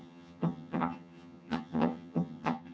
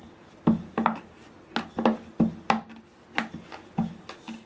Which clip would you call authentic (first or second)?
second